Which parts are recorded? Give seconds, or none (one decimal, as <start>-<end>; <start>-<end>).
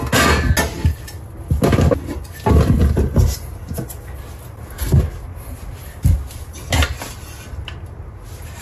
0.0-2.8; 3.4-8.6